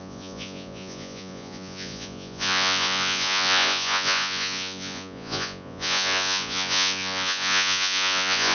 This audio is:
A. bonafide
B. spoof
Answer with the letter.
B